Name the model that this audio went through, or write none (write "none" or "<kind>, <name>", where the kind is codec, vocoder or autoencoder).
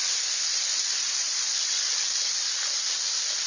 none